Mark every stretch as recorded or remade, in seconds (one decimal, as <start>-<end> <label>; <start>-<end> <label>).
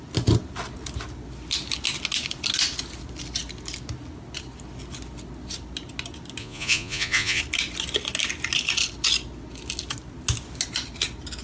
0.0-6.4 recorded; 6.4-7.4 remade; 7.4-11.4 recorded